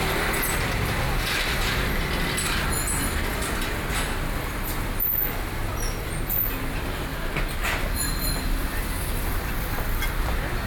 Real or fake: real